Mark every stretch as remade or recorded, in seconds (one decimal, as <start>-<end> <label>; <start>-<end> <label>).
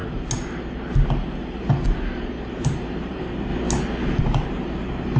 0.0-2.5 recorded; 2.5-3.5 remade; 3.5-4.2 recorded; 4.2-5.2 remade